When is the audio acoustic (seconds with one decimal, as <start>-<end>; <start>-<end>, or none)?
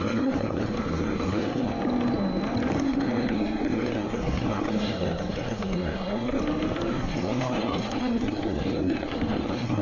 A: 1.7-2.8; 6.4-6.9